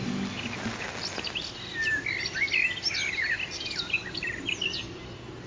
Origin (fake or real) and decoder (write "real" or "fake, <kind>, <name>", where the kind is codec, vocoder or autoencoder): real